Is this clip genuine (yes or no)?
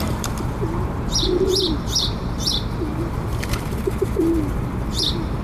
no